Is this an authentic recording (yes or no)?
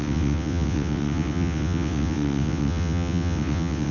no